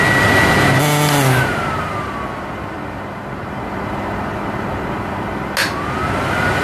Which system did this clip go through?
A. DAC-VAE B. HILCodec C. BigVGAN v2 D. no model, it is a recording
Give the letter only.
D